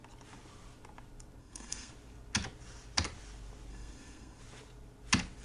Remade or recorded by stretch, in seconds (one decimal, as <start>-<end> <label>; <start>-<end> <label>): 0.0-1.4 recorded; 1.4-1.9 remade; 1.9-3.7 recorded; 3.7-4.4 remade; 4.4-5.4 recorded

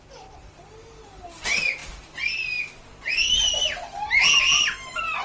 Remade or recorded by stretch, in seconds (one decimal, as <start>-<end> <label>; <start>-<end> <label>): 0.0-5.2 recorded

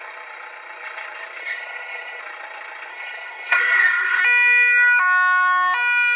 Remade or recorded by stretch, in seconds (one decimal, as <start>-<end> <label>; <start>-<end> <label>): 0.0-1.4 recorded; 1.4-2.2 remade; 2.2-2.9 recorded; 2.9-4.2 remade; 4.2-6.2 recorded

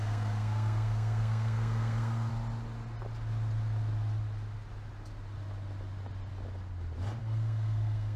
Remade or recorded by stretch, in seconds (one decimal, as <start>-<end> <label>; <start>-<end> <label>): 0.0-2.3 remade; 2.3-7.2 recorded; 7.2-8.2 remade

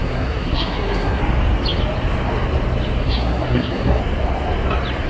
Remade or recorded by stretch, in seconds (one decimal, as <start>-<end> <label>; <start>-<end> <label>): 0.0-1.2 remade; 1.2-3.0 recorded; 3.0-4.0 remade; 4.0-5.1 recorded

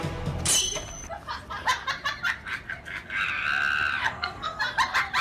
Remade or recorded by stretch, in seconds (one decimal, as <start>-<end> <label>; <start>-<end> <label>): 0.0-4.0 recorded; 4.0-4.6 remade; 4.6-5.2 recorded

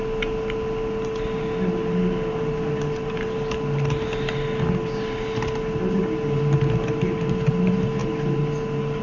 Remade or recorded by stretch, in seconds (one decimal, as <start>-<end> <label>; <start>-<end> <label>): 0.0-9.0 recorded

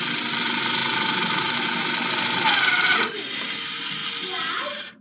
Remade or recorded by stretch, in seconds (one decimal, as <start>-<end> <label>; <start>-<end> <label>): 0.0-5.0 recorded